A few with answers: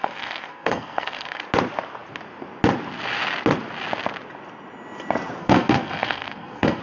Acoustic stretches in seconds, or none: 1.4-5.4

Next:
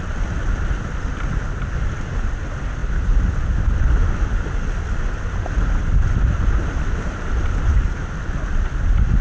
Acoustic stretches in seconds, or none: 0.0-9.2

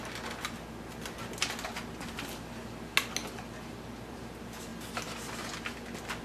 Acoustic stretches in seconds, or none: 0.0-6.2

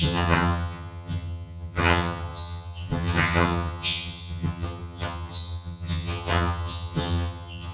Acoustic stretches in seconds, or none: none

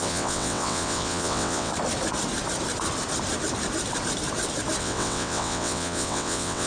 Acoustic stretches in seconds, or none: 1.7-4.8

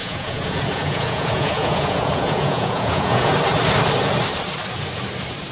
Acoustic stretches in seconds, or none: 3.3-5.5

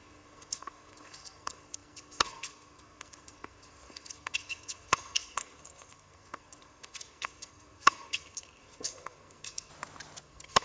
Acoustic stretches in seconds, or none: 9.7-10.2